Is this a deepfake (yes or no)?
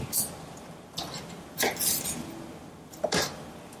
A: no